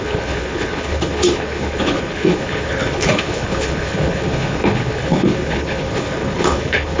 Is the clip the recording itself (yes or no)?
no